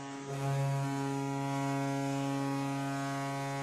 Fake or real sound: real